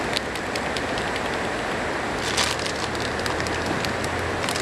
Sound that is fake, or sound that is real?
real